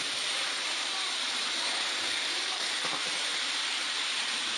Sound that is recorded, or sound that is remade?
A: remade